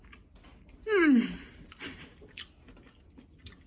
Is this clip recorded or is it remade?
recorded